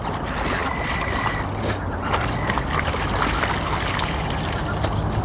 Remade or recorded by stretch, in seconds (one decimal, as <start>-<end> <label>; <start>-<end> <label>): 0.0-5.2 recorded